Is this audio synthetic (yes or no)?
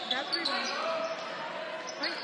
no